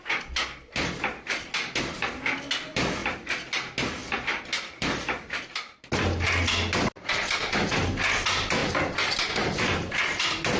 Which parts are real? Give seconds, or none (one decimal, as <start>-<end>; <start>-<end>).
0.0-3.0; 3.5-4.0; 5.4-10.6